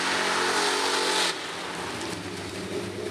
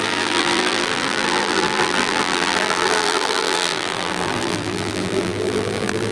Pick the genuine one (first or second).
first